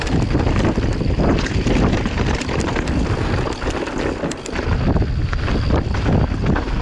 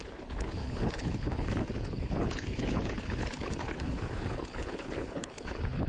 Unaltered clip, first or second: first